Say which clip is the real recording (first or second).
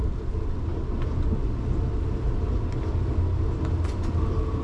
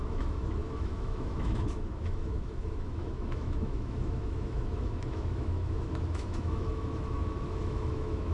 first